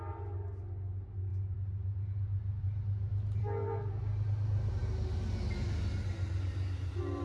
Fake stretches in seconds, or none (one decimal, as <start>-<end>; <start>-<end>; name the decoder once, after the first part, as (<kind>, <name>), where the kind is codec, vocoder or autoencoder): 3.4-3.9 (codec, SNAC)